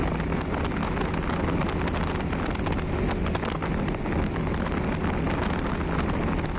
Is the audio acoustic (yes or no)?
yes